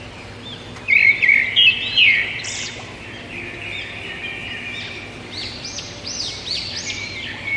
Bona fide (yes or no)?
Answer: yes